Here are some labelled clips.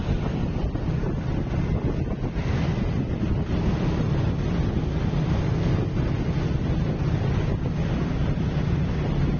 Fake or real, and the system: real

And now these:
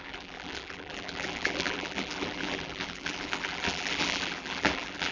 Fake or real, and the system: fake, vocoder, BigVGAN v2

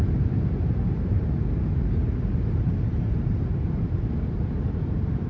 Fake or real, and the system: fake, vocoder, BigVGAN v2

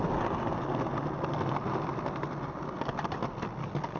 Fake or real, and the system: real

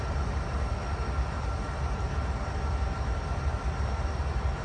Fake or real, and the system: real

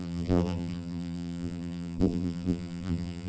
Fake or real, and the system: fake, vocoder, BigVGAN v2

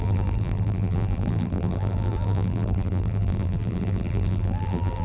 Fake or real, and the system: fake, vocoder, BigVGAN v2